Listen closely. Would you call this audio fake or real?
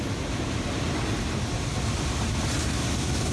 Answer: real